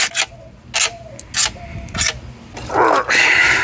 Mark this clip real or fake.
real